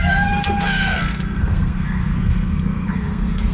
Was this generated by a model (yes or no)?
yes